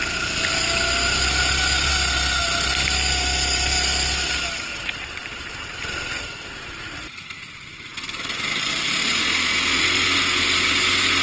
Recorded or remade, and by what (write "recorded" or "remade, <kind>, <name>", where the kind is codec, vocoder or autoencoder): recorded